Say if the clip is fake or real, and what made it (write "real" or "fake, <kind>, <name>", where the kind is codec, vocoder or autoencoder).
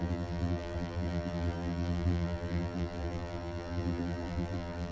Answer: fake, vocoder, BigVGAN v2